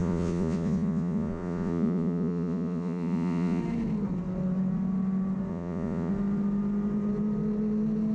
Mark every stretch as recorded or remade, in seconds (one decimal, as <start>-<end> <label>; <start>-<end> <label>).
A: 0.0-3.6 remade; 3.6-5.5 recorded; 5.5-6.1 remade; 6.1-8.1 recorded